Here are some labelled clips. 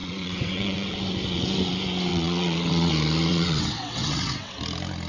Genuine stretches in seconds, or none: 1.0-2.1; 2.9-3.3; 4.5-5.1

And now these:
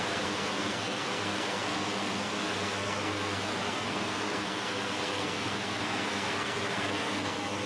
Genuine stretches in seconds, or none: none

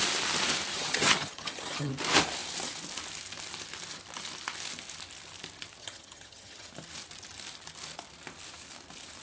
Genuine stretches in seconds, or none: 0.0-0.7; 1.9-5.8; 6.7-9.2

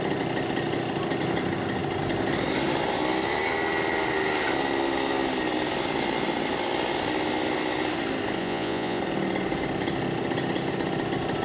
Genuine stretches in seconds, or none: 0.0-8.4; 9.0-11.4

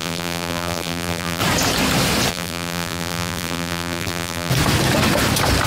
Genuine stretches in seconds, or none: 1.4-2.3; 4.5-5.7